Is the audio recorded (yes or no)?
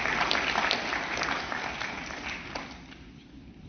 yes